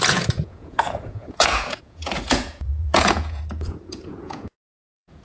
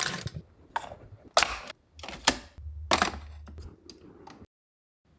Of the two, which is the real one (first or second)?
second